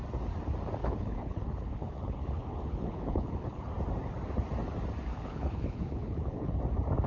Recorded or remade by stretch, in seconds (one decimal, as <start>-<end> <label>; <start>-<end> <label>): 0.0-0.8 recorded; 0.8-3.7 remade; 3.7-5.1 recorded; 5.1-6.6 remade; 6.6-7.1 recorded